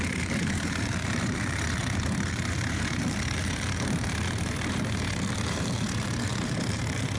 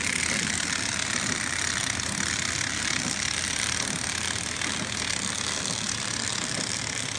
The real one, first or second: second